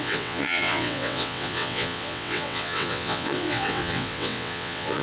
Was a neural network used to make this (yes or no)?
yes